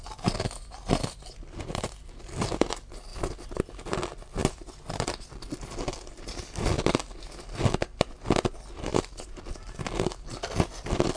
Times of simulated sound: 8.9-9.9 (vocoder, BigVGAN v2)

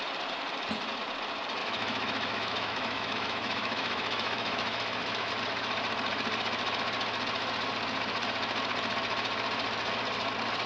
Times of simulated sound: 1.6-5.3 (autoencoder, DAC-VAE)

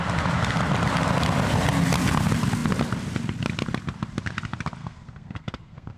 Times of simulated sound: 4.8-6.0 (codec, SNAC)